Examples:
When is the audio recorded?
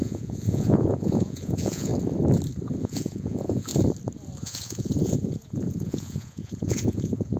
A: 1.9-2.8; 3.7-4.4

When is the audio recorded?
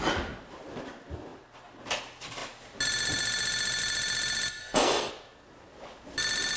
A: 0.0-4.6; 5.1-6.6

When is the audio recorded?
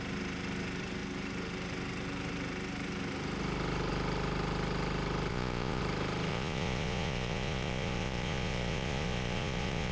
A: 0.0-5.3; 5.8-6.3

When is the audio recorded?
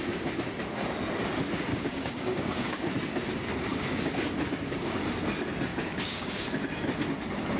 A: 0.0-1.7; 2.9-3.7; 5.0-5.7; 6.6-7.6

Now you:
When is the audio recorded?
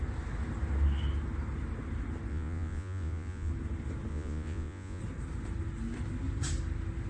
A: 0.0-2.3; 3.5-4.1; 5.0-7.1